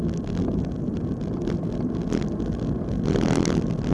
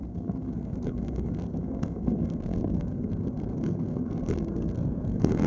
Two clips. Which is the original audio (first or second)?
first